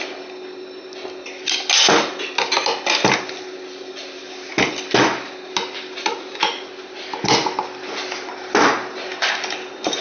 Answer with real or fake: real